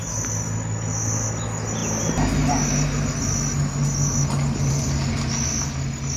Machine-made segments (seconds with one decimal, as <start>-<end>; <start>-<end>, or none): none